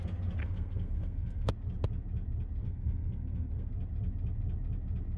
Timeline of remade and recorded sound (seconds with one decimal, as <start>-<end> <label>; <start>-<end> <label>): 0.0-0.4 recorded; 0.4-1.5 remade; 1.5-2.6 recorded; 2.6-3.7 remade; 3.7-5.2 recorded

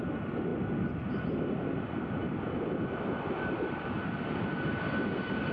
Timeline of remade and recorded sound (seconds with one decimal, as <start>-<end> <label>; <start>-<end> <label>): 0.0-0.5 recorded; 0.5-3.8 remade; 3.8-5.5 recorded

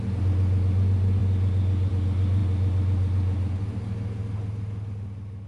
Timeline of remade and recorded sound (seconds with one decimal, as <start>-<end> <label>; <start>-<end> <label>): 0.0-5.5 recorded

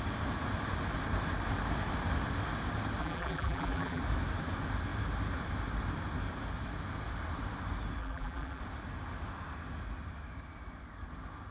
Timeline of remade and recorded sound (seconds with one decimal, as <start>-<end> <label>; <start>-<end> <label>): 0.0-3.0 recorded; 3.0-4.0 remade; 4.0-8.0 recorded; 8.0-8.6 remade; 8.6-11.5 recorded

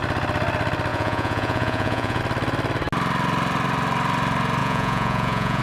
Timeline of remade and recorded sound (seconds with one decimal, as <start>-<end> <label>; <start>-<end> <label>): 0.0-0.9 recorded; 0.9-2.2 remade; 2.2-4.6 recorded; 4.6-5.6 remade

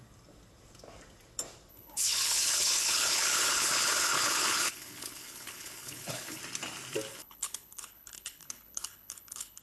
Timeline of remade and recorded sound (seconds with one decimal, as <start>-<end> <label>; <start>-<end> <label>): 0.0-1.7 recorded; 1.7-6.4 remade; 6.4-7.1 recorded; 7.1-9.6 remade

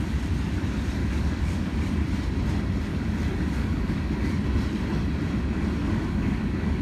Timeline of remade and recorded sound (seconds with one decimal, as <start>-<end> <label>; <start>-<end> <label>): 0.0-1.0 recorded; 1.0-1.9 remade; 1.9-2.9 recorded; 2.9-4.4 remade; 4.4-5.8 recorded; 5.8-6.8 remade